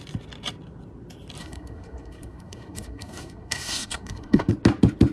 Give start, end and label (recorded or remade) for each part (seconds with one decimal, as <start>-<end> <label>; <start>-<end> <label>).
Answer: 0.0-1.4 recorded; 1.4-4.5 remade; 4.5-5.1 recorded

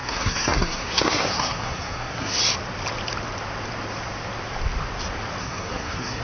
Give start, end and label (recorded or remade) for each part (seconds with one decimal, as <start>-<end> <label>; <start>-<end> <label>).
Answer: 0.0-2.4 remade; 2.4-5.4 recorded; 5.4-6.2 remade

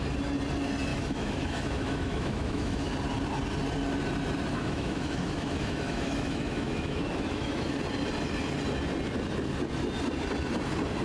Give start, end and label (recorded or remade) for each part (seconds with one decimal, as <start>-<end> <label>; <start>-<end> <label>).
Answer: 0.0-0.9 recorded; 0.9-2.9 remade; 2.9-4.5 recorded; 4.5-7.7 remade; 7.7-11.0 recorded

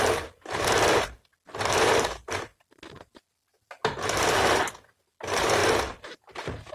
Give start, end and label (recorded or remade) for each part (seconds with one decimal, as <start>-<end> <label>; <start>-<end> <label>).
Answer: 0.0-6.7 recorded

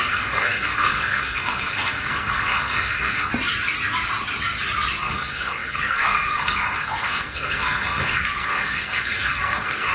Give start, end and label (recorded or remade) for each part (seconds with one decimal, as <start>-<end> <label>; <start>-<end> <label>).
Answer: 0.0-3.3 remade; 3.3-5.0 recorded; 5.0-9.9 remade

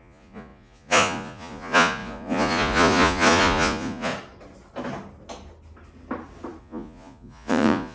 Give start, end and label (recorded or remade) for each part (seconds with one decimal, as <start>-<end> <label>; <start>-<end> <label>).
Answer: 0.0-4.1 remade; 4.1-6.6 recorded; 6.6-7.9 remade